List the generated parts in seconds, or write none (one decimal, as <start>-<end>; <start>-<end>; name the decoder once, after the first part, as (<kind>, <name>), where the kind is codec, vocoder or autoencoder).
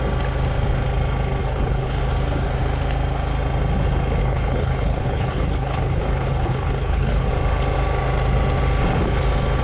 1.4-2.0 (codec, HILCodec); 4.2-7.3